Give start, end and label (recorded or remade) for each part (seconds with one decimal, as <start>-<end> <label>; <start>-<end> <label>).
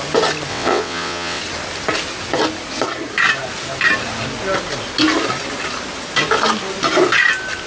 0.0-0.5 recorded; 0.5-1.4 remade; 1.4-7.7 recorded